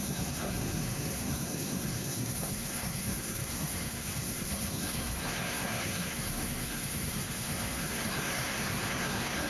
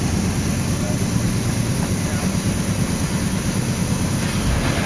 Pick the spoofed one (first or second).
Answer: first